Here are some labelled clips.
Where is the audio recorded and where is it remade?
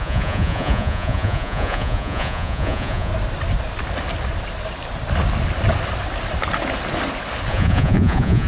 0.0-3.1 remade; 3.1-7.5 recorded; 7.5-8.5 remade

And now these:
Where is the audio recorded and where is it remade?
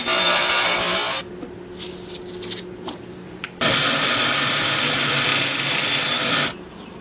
0.0-7.0 recorded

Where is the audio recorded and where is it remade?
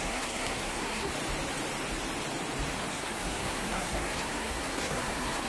0.0-1.1 remade; 1.1-2.9 recorded; 2.9-5.5 remade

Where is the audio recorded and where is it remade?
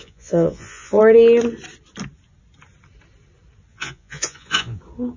0.0-1.0 remade; 1.0-3.7 recorded; 3.7-4.8 remade; 4.8-5.2 recorded